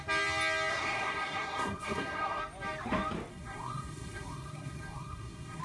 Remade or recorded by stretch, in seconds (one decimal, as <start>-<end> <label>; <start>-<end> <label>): 0.0-0.7 recorded; 0.7-2.4 remade; 2.4-3.3 recorded; 3.3-5.6 remade